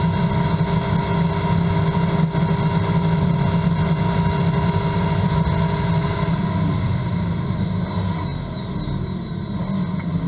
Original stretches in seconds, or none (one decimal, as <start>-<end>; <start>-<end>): 0.0-10.3